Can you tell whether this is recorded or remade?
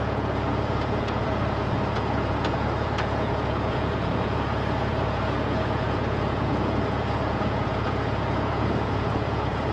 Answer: remade